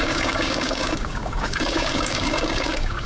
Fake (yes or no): yes